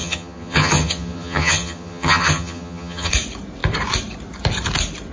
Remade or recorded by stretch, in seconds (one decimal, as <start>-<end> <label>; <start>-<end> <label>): 0.0-3.1 remade; 3.1-5.1 recorded